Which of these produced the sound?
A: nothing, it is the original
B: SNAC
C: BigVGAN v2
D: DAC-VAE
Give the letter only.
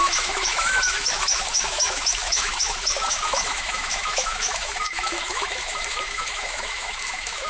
D